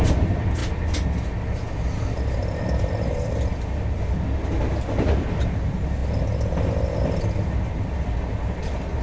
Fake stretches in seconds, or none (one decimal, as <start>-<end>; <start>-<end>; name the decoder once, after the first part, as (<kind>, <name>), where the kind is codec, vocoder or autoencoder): none